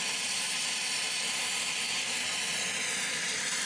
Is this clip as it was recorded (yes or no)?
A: yes